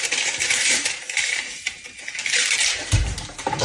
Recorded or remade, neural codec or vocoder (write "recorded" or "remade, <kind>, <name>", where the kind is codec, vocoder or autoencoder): remade, vocoder, BigVGAN v2